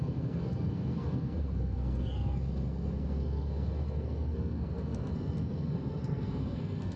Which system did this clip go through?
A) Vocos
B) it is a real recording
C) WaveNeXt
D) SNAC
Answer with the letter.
D